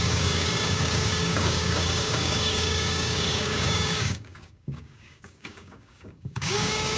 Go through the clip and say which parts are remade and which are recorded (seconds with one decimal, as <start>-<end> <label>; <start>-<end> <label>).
0.0-7.0 remade